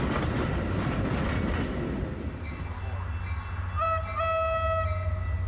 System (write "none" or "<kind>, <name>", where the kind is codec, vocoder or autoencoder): none